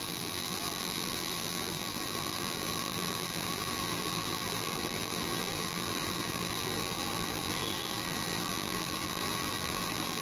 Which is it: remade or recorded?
remade